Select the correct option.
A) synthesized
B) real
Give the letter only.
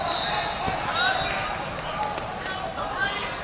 B